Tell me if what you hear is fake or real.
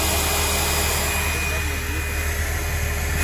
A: real